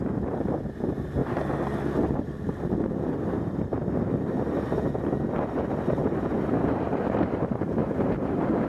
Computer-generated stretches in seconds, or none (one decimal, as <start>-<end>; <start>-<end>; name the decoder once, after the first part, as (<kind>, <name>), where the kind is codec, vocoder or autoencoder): 0.0-1.2 (vocoder, BigVGAN v2); 2.8-3.7; 4.3-8.7